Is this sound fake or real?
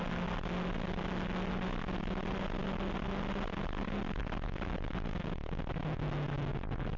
real